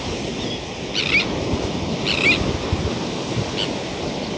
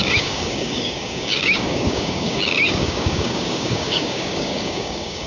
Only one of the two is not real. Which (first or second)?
second